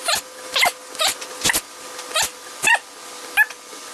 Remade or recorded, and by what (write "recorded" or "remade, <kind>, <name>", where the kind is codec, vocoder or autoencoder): recorded